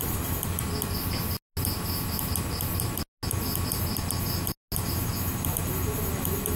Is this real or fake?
real